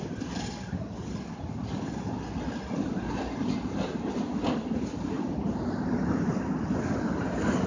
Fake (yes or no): no